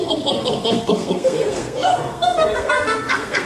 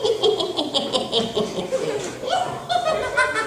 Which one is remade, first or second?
first